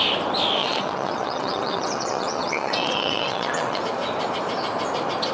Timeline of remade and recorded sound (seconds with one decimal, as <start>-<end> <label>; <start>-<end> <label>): 0.0-0.6 recorded; 0.6-3.8 remade; 3.8-5.3 recorded

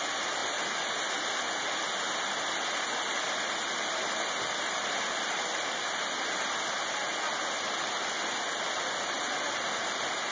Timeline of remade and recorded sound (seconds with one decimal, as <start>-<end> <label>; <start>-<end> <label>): 0.0-10.3 recorded